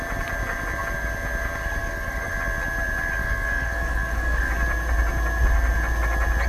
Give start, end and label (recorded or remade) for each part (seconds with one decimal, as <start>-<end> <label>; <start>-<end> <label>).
0.0-1.8 recorded; 1.8-2.3 remade; 2.3-3.2 recorded; 3.2-4.5 remade; 4.5-6.5 recorded